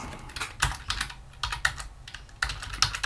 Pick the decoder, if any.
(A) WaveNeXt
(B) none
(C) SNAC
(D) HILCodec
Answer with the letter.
B